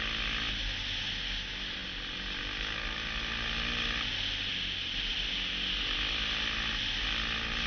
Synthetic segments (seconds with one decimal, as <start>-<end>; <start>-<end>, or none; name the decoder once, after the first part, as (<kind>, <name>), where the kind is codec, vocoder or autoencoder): none